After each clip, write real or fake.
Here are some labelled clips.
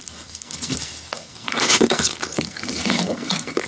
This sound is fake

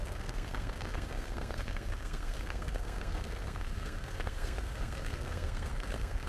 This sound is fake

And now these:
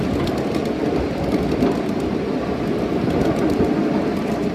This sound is real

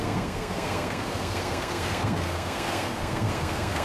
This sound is fake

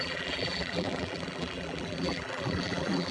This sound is fake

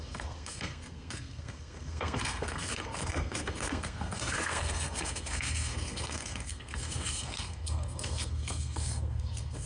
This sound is fake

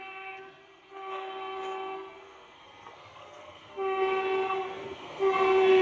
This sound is fake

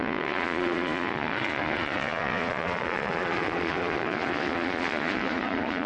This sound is fake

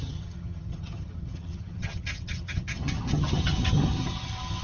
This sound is fake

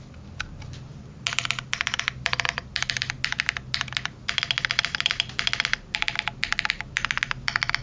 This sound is real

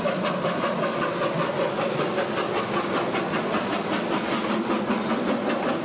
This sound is real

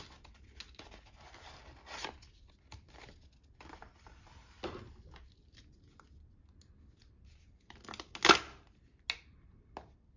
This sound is real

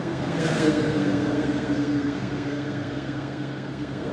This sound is fake